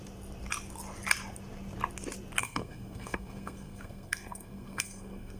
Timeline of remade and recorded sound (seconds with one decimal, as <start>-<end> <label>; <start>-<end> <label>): 0.0-2.4 recorded; 2.4-5.4 remade